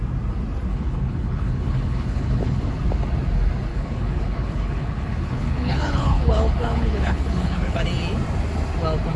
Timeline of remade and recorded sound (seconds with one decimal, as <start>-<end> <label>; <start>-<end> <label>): 0.0-0.7 recorded; 0.7-2.7 remade; 2.7-3.7 recorded; 3.7-7.8 remade; 7.8-9.2 recorded